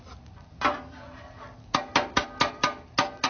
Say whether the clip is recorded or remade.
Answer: recorded